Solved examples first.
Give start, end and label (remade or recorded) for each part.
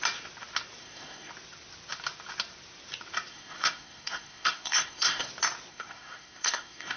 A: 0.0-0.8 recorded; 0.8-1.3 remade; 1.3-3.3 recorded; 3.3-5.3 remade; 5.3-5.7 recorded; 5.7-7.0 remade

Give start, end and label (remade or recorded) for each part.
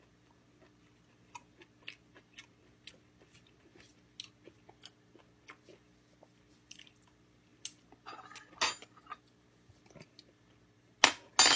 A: 0.0-11.6 recorded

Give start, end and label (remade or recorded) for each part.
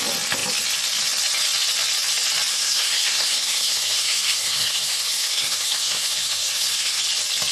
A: 0.0-2.5 recorded; 2.5-7.0 remade; 7.0-7.5 recorded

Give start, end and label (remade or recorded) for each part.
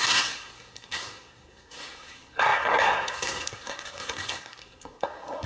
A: 0.0-5.5 remade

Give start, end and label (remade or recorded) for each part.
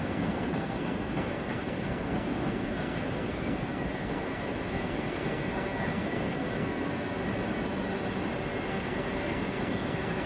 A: 0.0-7.2 remade; 7.2-8.7 recorded; 8.7-10.3 remade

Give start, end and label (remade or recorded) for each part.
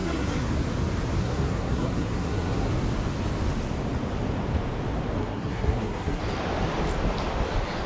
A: 0.0-0.5 remade; 0.5-1.2 recorded; 1.2-2.7 remade; 2.7-5.2 recorded; 5.2-6.2 remade; 6.2-7.9 recorded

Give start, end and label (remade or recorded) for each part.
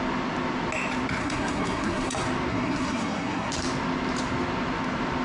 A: 0.0-1.2 recorded; 1.2-2.1 remade; 2.1-2.5 recorded; 2.5-3.5 remade; 3.5-5.2 recorded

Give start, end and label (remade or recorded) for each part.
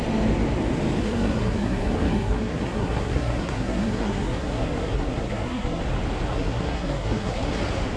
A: 0.0-1.0 recorded; 1.0-5.8 remade; 5.8-6.3 recorded; 6.3-7.6 remade; 7.6-8.0 recorded